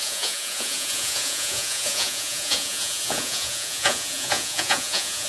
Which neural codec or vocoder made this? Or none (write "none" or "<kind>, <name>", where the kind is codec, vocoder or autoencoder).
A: vocoder, Vocos